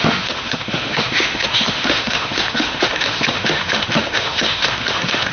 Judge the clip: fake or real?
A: fake